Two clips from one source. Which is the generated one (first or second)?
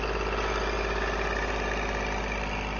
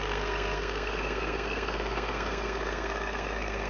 second